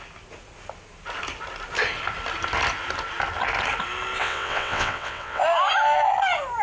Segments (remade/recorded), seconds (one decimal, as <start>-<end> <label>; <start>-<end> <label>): 0.0-4.2 recorded; 4.2-5.4 remade; 5.4-6.6 recorded